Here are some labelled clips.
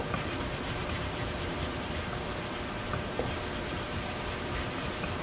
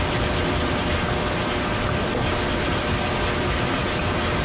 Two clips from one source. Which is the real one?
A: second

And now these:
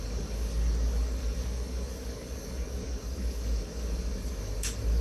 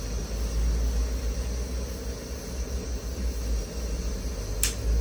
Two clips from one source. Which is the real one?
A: second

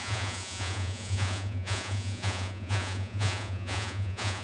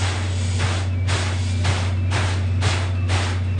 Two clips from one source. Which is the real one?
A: second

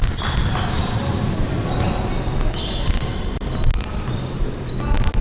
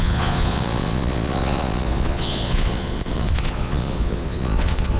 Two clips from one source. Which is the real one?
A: first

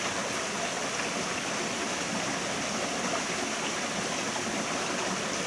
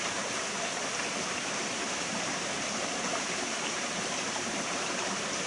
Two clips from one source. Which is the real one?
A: first